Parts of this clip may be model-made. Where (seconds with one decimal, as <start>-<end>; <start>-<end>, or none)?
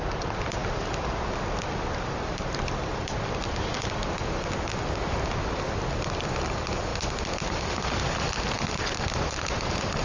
0.6-1.2